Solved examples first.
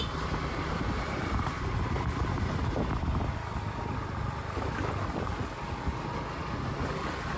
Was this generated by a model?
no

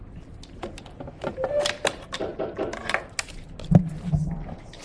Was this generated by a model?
no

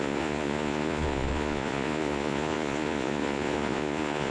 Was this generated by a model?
yes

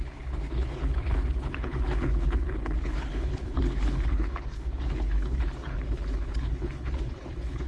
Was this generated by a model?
yes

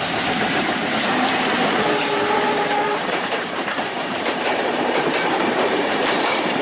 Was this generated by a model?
yes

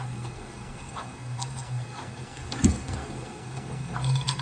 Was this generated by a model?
yes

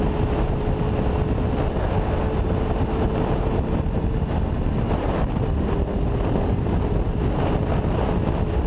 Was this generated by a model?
no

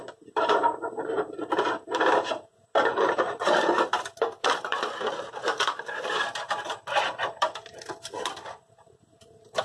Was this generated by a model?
yes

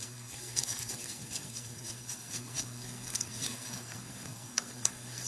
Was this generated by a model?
yes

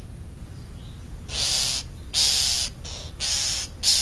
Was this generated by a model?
no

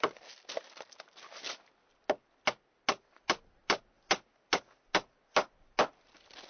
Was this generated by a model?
no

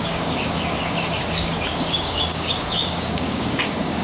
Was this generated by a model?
yes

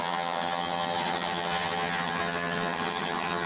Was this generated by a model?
yes